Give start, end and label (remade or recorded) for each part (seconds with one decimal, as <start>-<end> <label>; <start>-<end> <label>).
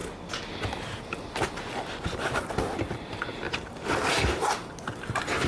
0.0-5.5 recorded